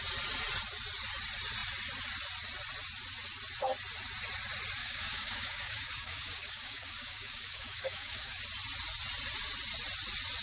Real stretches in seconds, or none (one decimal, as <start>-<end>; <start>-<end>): 0.0-4.8; 8.4-10.4